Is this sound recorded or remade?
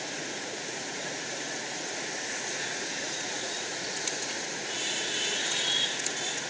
remade